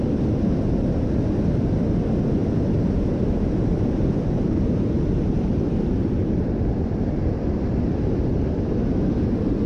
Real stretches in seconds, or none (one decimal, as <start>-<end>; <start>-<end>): 0.0-9.7